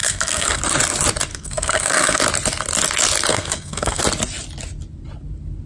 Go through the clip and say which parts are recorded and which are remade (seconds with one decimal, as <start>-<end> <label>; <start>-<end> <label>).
0.0-0.6 remade; 0.6-1.3 recorded; 1.3-2.2 remade; 2.2-3.3 recorded; 3.3-4.0 remade; 4.0-5.7 recorded